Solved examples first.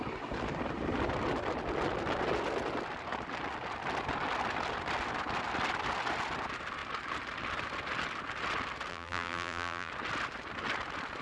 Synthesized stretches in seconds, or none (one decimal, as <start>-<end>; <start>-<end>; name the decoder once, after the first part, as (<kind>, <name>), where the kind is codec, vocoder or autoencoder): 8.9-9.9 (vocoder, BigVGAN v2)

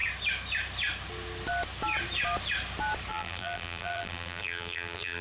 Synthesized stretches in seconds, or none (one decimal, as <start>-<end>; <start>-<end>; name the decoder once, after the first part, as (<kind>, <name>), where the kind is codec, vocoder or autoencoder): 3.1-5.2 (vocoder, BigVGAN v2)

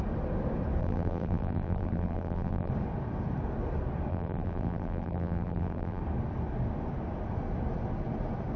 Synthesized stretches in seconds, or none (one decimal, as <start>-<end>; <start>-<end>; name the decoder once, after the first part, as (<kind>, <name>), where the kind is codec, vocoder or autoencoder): 0.8-2.7 (vocoder, BigVGAN v2); 4.1-6.0

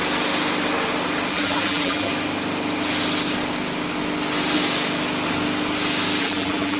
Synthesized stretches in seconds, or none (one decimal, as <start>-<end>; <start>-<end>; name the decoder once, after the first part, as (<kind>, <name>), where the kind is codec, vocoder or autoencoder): 1.3-2.1 (vocoder, BigVGAN v2); 6.2-6.8

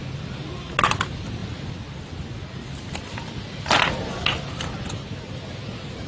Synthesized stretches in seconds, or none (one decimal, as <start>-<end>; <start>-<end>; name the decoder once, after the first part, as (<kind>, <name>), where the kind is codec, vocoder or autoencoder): none